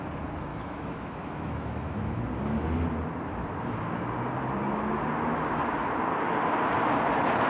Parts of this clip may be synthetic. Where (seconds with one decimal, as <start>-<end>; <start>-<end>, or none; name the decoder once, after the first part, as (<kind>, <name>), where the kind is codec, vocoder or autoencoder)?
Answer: 0.5-2.2 (autoencoder, DAC-VAE)